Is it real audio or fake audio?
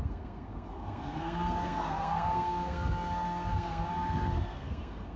fake